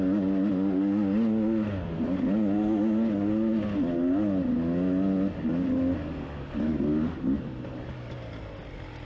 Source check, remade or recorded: recorded